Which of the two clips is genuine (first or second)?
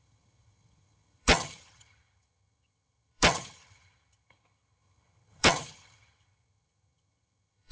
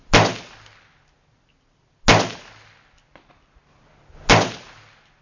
second